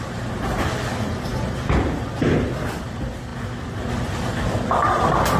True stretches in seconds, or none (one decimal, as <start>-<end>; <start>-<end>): 0.0-5.4